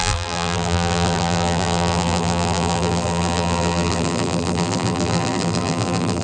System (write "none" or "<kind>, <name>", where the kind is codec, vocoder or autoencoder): vocoder, BigVGAN v2